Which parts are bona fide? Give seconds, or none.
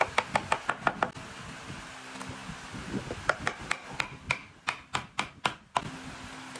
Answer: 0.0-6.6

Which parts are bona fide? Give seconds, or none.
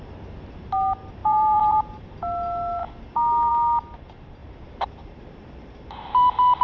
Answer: 0.0-1.2; 2.1-4.4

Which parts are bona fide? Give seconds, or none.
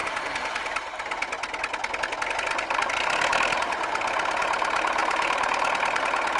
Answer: 0.0-6.4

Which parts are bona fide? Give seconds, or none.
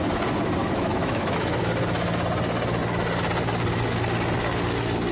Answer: 0.0-0.6; 1.6-5.1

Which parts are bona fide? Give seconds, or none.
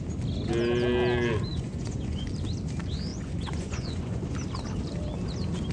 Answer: 0.0-1.5; 2.3-3.1; 4.2-5.7